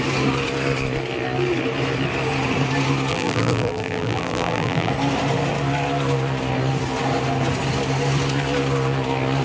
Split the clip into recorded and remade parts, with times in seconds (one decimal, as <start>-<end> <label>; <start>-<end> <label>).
0.0-3.1 recorded; 3.1-4.9 remade; 4.9-9.4 recorded